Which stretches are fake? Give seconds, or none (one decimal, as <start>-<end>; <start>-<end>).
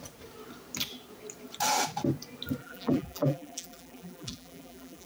2.6-5.1